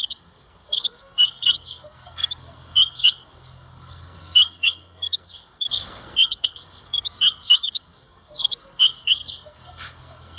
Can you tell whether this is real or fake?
fake